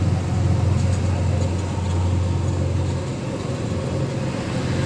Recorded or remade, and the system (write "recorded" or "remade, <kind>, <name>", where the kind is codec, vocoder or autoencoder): recorded